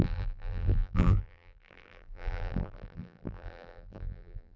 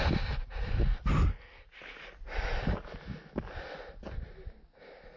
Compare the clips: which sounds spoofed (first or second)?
first